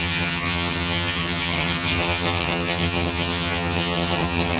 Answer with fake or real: fake